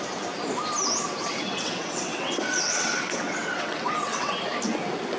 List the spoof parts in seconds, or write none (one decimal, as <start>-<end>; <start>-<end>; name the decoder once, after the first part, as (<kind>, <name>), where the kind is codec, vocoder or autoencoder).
1.2-4.3 (vocoder, WaveNeXt)